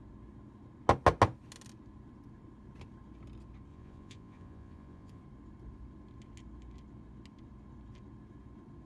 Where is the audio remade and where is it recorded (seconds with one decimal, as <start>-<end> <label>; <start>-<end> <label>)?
0.0-3.7 recorded; 3.7-5.2 remade; 5.2-8.9 recorded